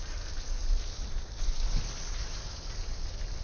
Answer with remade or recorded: recorded